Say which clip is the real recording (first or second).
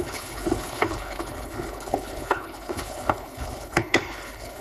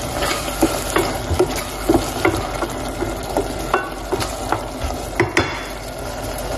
second